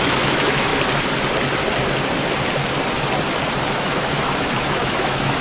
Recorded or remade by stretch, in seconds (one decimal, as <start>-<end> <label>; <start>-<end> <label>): 0.0-0.7 remade; 0.7-3.7 recorded; 3.7-5.4 remade